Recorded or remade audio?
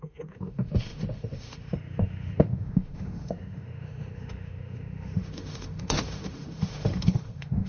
remade